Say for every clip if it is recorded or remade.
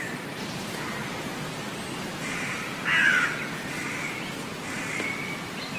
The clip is recorded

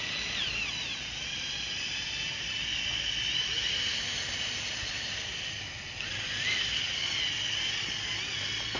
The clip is recorded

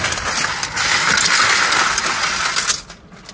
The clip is recorded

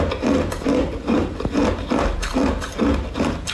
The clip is remade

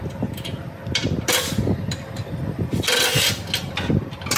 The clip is recorded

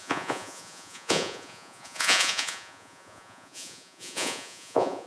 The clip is remade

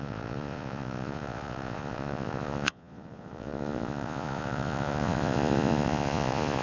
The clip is remade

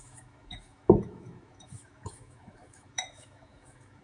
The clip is remade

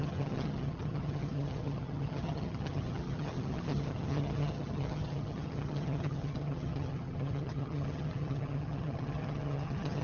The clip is remade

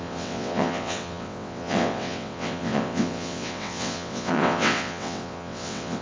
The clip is remade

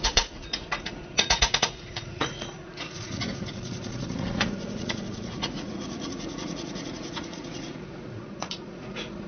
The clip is remade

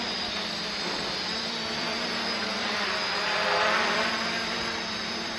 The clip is remade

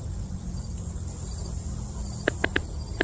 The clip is recorded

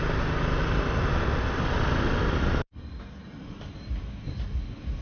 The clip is recorded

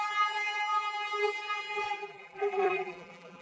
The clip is remade